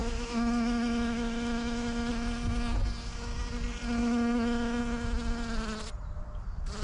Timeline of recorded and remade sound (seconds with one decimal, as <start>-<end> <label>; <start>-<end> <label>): 0.0-2.1 remade; 2.1-4.0 recorded; 4.0-4.8 remade; 4.8-6.8 recorded